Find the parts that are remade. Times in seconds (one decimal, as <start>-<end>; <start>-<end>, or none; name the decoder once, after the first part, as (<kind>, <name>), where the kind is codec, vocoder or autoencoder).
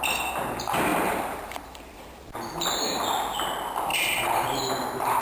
0.9-3.0 (vocoder, BigVGAN v2); 3.9-5.2